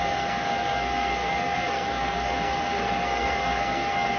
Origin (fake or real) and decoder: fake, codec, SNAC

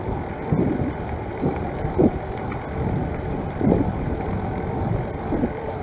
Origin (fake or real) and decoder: fake, vocoder, BigVGAN v2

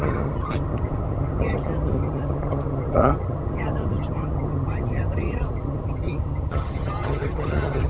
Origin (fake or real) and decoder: fake, vocoder, HiFi-GAN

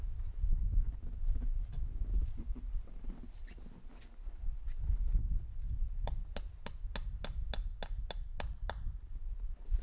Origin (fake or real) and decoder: real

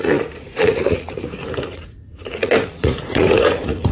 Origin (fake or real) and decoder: fake, vocoder, Vocos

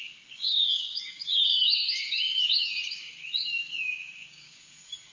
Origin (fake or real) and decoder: fake, codec, DAC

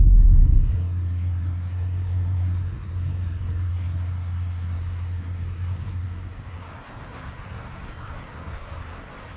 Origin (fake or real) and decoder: fake, codec, SNAC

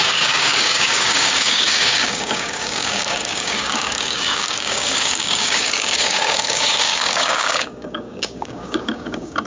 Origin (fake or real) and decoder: fake, codec, DAC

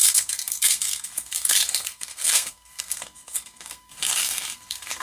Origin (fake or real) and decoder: fake, codec, SNAC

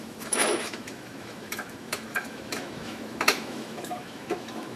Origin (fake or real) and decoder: fake, autoencoder, DAC-VAE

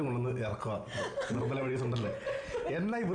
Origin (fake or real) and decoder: real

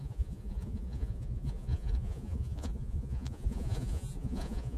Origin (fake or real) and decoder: fake, vocoder, Vocos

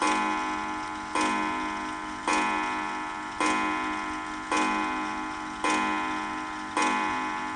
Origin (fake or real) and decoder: real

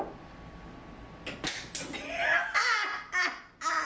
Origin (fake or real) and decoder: real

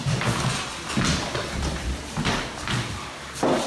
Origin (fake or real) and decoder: real